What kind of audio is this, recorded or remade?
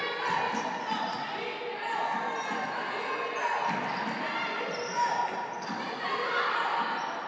recorded